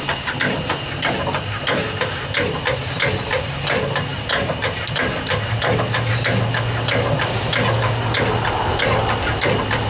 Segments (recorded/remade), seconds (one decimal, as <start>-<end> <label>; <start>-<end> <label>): 0.0-9.9 recorded